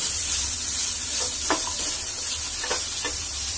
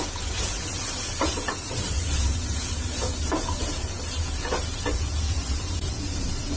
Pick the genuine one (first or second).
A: first